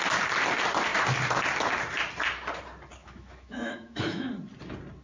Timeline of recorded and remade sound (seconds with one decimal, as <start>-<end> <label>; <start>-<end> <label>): 0.0-3.0 recorded; 3.0-4.3 remade; 4.3-5.0 recorded